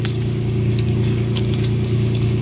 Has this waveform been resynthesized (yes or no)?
yes